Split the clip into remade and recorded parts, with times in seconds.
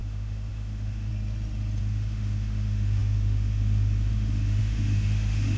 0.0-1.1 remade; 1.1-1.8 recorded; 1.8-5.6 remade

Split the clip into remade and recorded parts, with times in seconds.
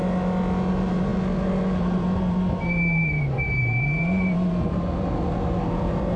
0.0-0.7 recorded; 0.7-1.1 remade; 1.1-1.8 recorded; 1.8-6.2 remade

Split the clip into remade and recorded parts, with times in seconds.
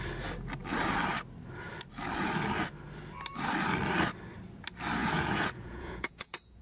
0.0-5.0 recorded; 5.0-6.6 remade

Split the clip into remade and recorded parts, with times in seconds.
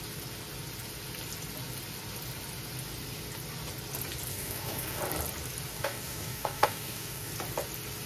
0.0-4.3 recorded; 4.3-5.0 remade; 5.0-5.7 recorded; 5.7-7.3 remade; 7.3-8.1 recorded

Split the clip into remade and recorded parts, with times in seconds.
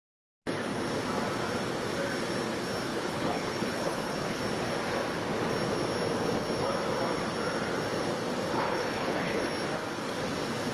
0.0-2.9 recorded; 2.9-4.4 remade; 4.4-8.5 recorded; 8.5-9.5 remade; 9.5-10.7 recorded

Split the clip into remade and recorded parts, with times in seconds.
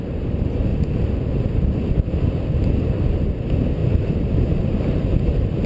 0.0-0.7 recorded; 0.7-1.3 remade; 1.3-3.8 recorded; 3.8-5.7 remade